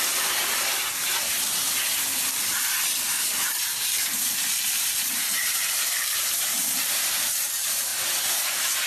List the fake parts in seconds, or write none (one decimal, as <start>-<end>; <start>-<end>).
4.1-7.0